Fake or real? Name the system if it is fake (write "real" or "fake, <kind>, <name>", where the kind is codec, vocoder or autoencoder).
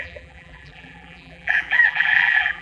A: fake, vocoder, BigVGAN v2